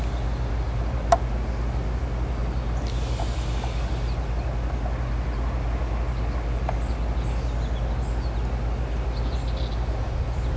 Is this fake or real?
real